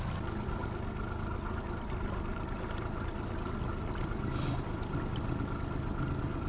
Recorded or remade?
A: recorded